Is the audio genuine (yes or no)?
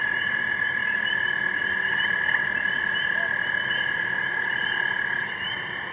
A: yes